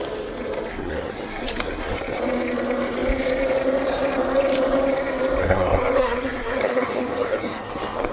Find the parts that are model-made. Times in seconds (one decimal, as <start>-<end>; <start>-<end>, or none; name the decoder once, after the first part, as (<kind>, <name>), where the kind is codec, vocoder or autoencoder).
0.7-2.2 (codec, SNAC); 5.4-8.1